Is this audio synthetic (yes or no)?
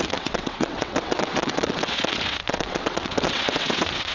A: yes